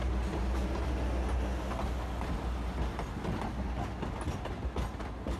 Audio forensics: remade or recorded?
recorded